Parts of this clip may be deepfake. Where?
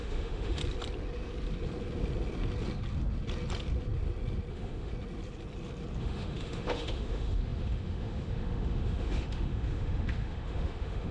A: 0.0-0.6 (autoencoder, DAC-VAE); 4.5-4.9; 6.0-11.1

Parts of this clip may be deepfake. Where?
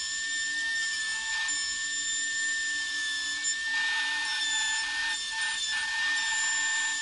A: none